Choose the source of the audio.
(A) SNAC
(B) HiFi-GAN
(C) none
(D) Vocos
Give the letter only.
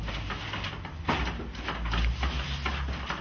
C